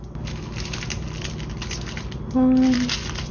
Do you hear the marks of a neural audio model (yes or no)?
no